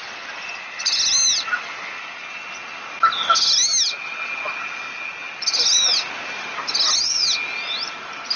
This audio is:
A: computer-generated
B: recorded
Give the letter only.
B